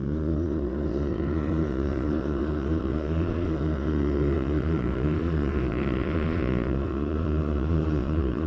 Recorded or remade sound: remade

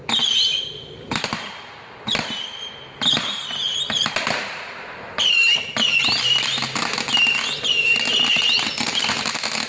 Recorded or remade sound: recorded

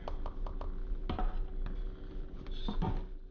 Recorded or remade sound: recorded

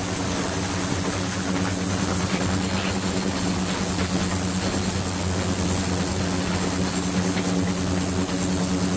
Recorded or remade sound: recorded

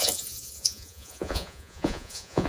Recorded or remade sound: remade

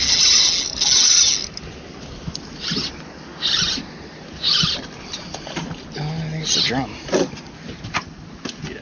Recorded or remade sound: recorded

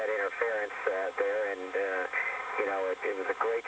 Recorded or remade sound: recorded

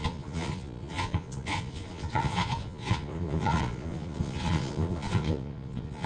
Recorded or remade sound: remade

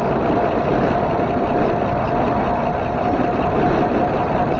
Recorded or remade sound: recorded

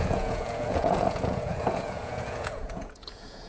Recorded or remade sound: remade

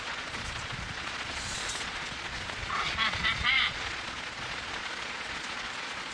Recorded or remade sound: remade